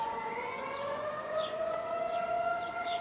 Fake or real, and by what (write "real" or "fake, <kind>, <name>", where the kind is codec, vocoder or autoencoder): fake, vocoder, Vocos